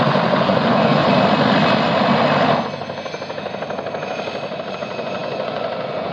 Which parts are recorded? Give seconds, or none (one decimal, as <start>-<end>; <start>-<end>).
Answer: 1.0-4.7